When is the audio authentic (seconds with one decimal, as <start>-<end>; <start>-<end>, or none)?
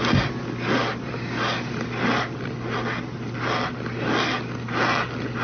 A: 0.0-5.4